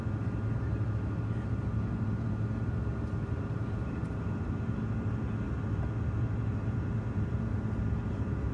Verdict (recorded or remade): remade